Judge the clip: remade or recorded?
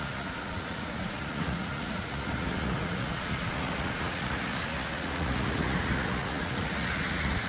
remade